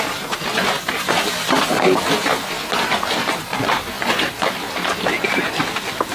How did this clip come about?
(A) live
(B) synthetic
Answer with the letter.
A